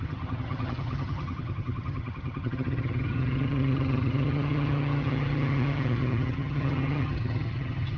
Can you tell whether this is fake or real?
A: fake